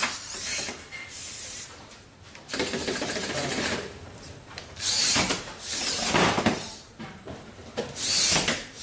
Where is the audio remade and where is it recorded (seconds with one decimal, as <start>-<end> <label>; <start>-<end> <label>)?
0.0-7.6 remade; 7.6-8.4 recorded; 8.4-8.8 remade